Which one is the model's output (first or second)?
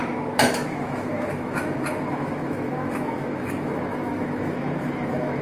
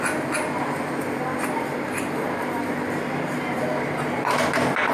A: first